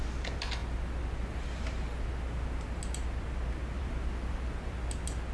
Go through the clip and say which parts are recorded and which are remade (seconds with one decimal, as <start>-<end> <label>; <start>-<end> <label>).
0.0-5.3 recorded